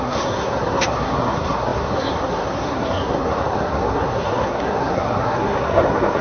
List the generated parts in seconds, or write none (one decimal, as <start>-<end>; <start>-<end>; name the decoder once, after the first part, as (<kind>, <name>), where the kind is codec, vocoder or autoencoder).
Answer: 0.0-6.2 (codec, SNAC)